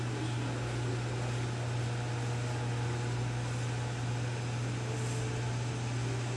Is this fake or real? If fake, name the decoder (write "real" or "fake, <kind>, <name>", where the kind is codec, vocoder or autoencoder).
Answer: real